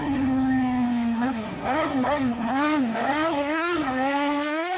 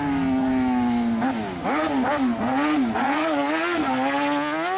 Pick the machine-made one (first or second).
first